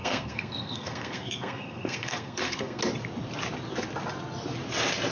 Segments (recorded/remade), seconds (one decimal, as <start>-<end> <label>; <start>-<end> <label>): 0.0-2.8 remade; 2.8-5.1 recorded